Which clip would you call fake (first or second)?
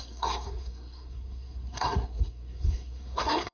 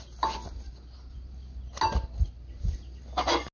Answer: first